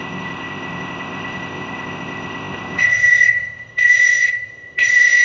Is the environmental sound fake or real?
fake